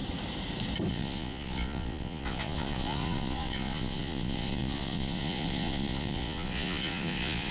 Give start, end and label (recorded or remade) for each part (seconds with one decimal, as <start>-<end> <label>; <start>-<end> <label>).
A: 0.0-0.9 recorded; 0.9-7.5 remade